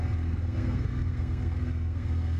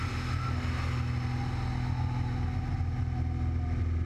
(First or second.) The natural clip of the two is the second